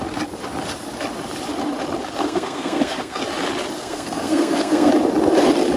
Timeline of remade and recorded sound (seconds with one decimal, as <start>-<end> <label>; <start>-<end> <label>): 0.0-2.2 recorded; 2.2-3.2 remade; 3.2-3.8 recorded; 3.8-4.9 remade; 4.9-5.8 recorded